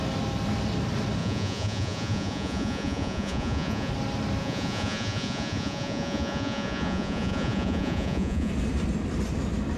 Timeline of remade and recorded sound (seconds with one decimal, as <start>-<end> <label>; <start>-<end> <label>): 0.0-1.2 recorded; 1.2-3.9 remade; 3.9-4.4 recorded; 4.4-8.5 remade; 8.5-9.8 recorded